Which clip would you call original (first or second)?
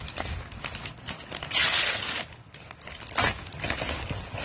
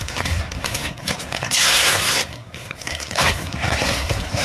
first